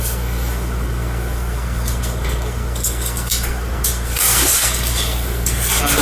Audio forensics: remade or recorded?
remade